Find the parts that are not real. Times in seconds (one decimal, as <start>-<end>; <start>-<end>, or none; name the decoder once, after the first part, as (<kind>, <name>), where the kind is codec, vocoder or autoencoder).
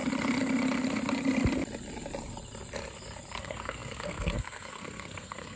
3.4-5.6 (codec, SNAC)